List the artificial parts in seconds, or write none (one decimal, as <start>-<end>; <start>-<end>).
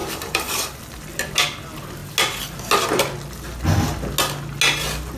0.0-0.8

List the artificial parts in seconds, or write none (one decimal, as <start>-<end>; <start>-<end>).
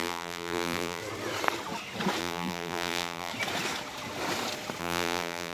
0.0-1.0; 2.2-3.3; 4.8-5.5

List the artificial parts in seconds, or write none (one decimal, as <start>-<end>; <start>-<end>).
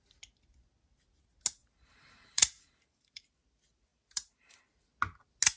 1.6-3.2; 3.9-4.6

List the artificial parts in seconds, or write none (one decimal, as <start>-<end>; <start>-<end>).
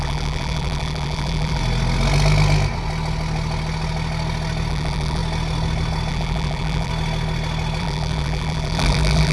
0.0-1.6; 4.7-5.2; 6.1-6.9; 7.8-9.3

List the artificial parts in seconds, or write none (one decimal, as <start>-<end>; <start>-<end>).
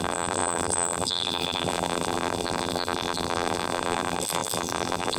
0.0-5.2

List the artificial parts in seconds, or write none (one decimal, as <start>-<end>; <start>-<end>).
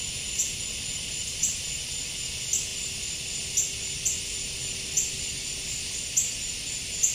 none